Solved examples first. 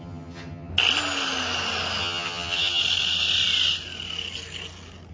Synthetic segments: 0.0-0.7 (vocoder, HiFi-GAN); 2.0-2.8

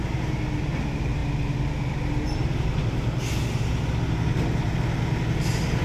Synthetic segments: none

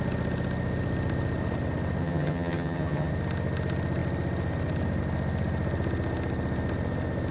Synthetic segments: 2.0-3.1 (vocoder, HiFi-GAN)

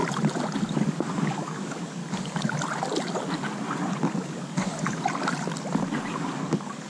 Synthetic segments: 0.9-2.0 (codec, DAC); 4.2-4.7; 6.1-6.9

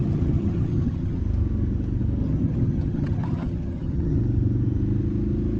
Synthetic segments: 0.0-1.2 (vocoder, HiFi-GAN); 2.2-4.2